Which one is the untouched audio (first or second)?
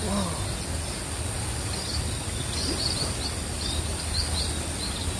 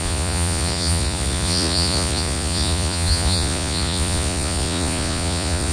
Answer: first